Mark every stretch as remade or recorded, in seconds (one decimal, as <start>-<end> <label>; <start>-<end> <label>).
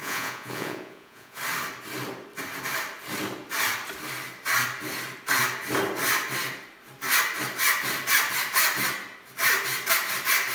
0.0-1.4 remade; 1.4-10.5 recorded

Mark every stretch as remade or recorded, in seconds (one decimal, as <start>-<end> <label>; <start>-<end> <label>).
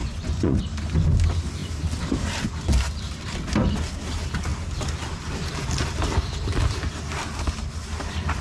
0.0-0.6 remade; 0.6-8.4 recorded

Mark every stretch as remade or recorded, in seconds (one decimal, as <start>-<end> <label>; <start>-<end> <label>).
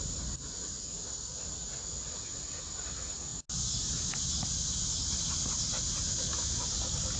0.0-7.2 recorded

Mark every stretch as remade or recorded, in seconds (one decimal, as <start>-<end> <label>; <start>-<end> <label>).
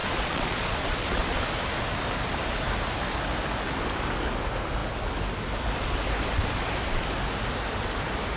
0.0-1.4 remade; 1.4-8.4 recorded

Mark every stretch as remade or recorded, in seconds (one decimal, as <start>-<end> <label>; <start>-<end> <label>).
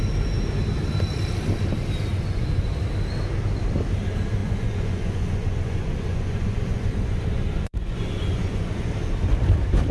0.0-2.1 recorded; 2.1-2.7 remade; 2.7-4.4 recorded; 4.4-8.9 remade; 8.9-9.9 recorded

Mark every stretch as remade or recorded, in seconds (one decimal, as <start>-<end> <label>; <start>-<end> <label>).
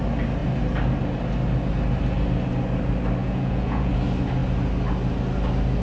0.0-3.2 recorded; 3.2-3.9 remade; 3.9-5.8 recorded